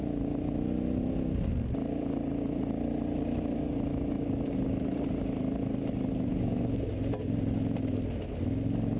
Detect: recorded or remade recorded